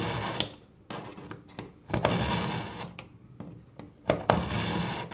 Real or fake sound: real